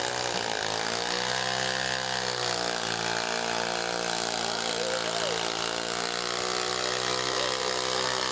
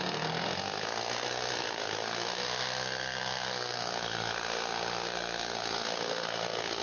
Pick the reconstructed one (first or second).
second